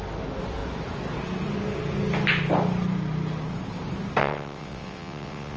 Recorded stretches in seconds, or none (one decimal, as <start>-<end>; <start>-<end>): 0.0-4.2